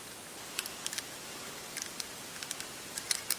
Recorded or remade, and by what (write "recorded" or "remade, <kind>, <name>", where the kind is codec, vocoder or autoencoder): recorded